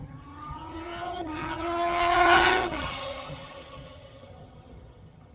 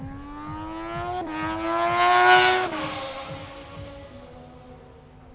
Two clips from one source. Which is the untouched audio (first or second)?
second